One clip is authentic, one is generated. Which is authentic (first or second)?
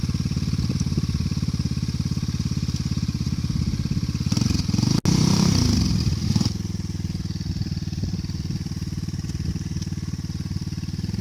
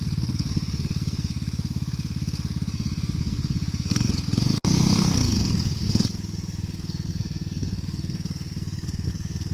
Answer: first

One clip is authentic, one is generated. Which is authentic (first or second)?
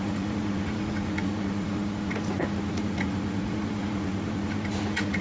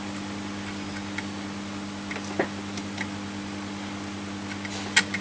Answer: second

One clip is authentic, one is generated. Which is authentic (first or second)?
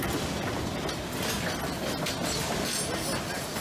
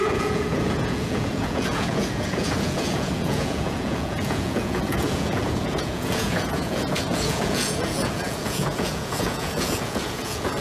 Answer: first